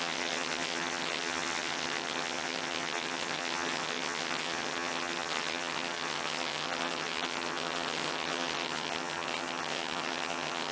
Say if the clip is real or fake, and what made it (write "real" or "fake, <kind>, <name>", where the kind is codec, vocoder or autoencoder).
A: fake, vocoder, HiFi-GAN